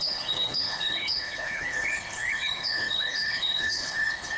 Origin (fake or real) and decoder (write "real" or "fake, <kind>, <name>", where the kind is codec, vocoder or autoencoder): fake, codec, HILCodec